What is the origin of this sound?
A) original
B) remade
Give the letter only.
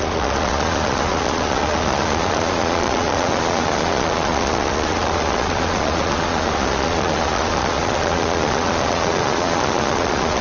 B